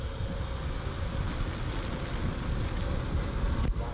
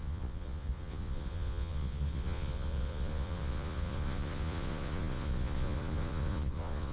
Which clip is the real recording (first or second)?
first